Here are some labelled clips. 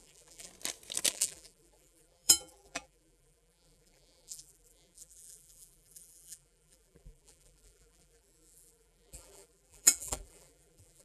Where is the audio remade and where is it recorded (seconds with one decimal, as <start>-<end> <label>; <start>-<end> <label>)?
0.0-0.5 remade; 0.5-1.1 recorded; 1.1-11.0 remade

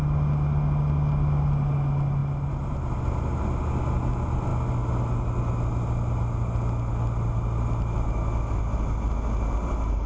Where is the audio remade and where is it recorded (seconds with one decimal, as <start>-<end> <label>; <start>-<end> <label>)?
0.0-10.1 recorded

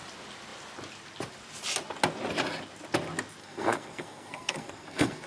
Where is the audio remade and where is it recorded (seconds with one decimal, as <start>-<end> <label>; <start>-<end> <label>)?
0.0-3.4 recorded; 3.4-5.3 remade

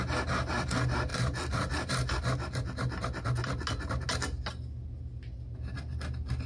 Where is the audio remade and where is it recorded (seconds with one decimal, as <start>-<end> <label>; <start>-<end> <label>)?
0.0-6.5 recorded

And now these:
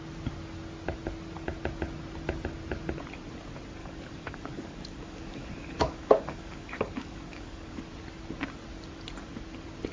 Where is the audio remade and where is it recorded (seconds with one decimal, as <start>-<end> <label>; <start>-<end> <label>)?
0.0-3.8 recorded; 3.8-7.8 remade; 7.8-9.9 recorded

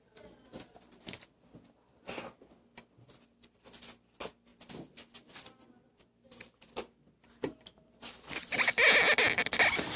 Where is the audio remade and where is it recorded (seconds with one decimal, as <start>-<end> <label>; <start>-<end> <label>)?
0.0-10.0 recorded

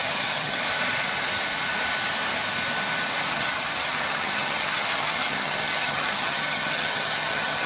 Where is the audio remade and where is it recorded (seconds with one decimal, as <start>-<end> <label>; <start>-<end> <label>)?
0.0-0.6 remade; 0.6-3.3 recorded; 3.3-7.7 remade

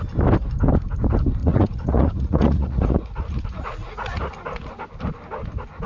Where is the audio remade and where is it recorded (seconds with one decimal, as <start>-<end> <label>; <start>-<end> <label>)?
0.0-1.4 recorded; 1.4-4.3 remade; 4.3-5.9 recorded